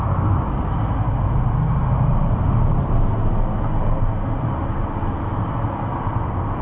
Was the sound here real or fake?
real